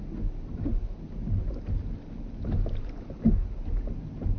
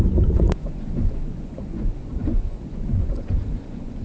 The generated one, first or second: second